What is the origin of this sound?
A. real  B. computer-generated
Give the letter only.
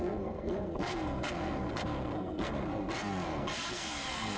B